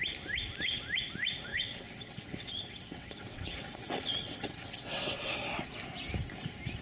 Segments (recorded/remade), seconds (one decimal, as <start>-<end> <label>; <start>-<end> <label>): 0.0-1.5 recorded; 1.5-5.3 remade; 5.3-6.8 recorded